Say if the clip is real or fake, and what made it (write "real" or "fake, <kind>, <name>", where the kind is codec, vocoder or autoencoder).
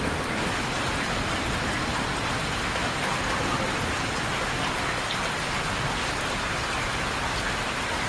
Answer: real